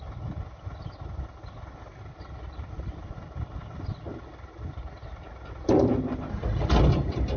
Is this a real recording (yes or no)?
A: yes